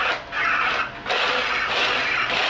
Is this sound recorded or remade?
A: recorded